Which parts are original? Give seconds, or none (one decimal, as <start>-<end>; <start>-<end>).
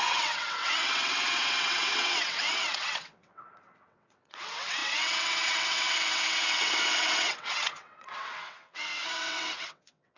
none